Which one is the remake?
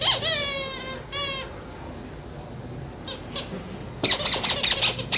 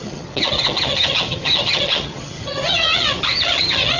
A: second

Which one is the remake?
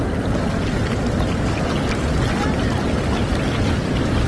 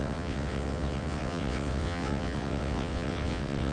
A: second